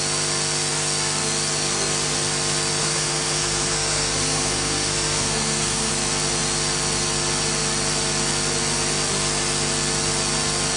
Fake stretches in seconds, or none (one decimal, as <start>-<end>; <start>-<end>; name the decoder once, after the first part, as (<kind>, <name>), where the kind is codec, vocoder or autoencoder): 2.8-5.9 (codec, SNAC)